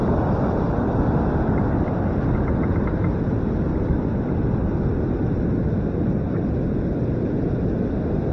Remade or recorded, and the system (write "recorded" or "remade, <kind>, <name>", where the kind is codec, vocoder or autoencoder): recorded